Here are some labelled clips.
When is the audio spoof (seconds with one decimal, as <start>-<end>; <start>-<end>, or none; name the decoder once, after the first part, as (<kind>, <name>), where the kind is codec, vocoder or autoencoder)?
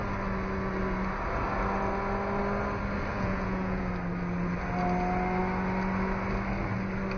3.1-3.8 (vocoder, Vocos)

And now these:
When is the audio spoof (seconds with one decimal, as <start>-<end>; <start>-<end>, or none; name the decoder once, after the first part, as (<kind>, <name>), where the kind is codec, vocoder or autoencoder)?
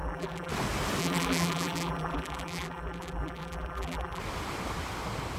0.0-0.5 (vocoder, BigVGAN v2); 1.0-4.2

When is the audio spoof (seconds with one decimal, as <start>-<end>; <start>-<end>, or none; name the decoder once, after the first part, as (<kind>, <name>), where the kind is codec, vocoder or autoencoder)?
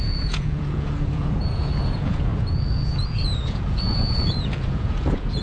0.0-5.4 (vocoder, Vocos)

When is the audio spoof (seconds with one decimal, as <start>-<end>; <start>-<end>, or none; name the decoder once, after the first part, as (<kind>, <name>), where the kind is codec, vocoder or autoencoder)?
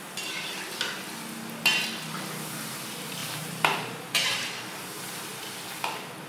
3.2-4.5 (vocoder, BigVGAN v2)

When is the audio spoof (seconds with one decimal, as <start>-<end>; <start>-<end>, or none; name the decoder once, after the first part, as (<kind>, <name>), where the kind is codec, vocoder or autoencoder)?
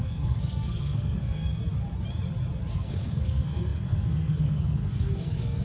0.0-1.6 (codec, SNAC); 2.7-5.6